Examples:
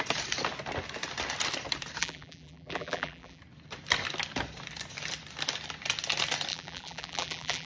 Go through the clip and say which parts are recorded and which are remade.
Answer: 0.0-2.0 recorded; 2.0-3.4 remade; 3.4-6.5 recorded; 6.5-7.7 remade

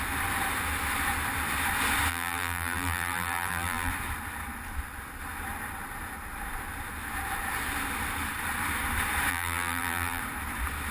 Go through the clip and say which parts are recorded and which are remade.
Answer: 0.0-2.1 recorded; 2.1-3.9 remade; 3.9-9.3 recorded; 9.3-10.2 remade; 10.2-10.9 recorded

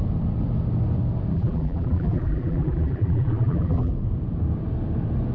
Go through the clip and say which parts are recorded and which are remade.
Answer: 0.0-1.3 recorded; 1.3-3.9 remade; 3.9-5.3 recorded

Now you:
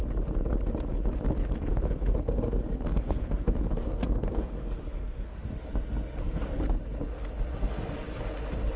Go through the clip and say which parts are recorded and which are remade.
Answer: 0.0-1.7 recorded; 1.7-5.7 remade; 5.7-6.2 recorded; 6.2-6.8 remade; 6.8-8.8 recorded